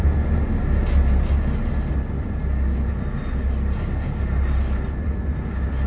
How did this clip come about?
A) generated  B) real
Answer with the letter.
B